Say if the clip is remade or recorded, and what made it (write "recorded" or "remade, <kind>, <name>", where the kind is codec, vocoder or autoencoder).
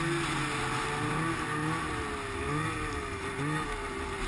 recorded